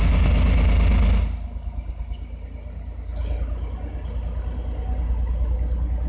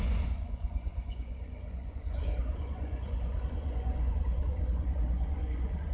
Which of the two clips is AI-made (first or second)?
second